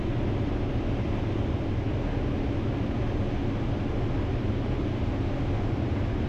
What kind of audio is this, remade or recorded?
recorded